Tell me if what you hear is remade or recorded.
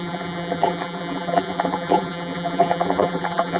remade